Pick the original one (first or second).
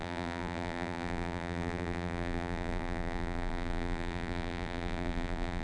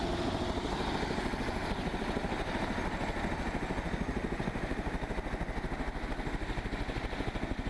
second